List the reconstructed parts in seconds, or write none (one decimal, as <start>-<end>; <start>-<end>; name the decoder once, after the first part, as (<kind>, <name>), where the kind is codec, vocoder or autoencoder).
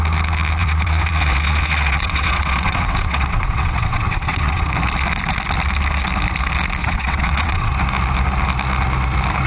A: 0.6-4.7 (vocoder, WaveNeXt); 6.8-7.7